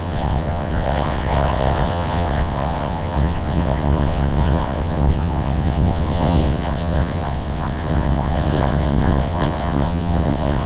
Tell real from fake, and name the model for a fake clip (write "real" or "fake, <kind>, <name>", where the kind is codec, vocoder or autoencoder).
fake, vocoder, WaveNeXt